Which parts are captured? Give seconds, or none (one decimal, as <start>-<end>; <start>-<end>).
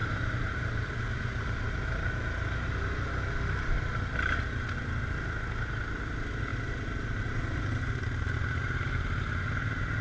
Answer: 2.2-6.5; 7.8-10.0